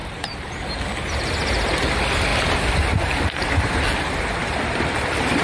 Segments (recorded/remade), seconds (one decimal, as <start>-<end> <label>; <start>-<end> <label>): 0.0-0.7 remade; 0.7-2.3 recorded; 2.3-3.5 remade; 3.5-4.4 recorded; 4.4-4.9 remade; 4.9-5.4 recorded